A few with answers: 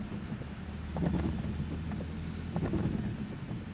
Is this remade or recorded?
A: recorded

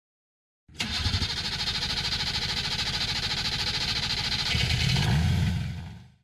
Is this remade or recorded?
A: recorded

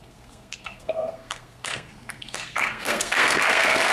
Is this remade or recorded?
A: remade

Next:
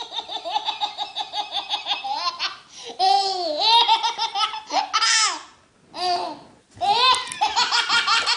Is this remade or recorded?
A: recorded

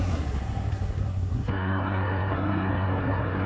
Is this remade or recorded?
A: remade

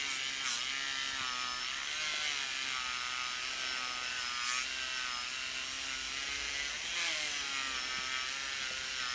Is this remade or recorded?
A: recorded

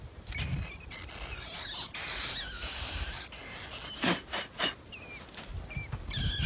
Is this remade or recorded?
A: recorded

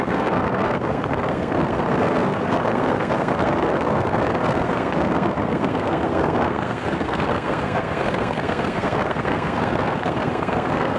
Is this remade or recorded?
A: remade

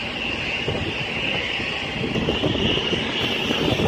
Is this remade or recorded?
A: recorded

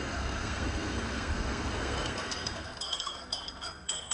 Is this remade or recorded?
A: remade